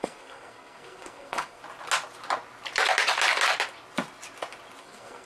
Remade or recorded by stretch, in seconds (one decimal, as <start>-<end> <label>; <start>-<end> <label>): 0.0-1.6 remade; 1.6-4.8 recorded; 4.8-5.3 remade